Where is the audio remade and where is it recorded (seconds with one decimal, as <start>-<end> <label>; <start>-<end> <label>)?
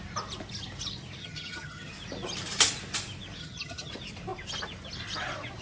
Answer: 0.0-1.2 recorded; 1.2-1.9 remade; 1.9-3.4 recorded; 3.4-3.9 remade; 3.9-5.6 recorded